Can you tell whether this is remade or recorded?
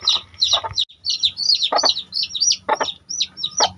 recorded